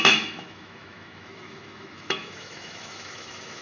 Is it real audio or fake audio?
fake